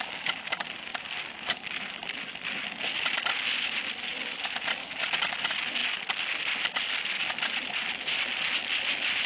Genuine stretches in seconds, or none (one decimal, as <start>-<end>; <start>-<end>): 0.0-0.9; 2.2-4.1; 4.7-5.8